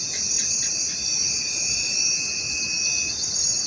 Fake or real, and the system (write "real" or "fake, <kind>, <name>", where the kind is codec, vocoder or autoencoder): real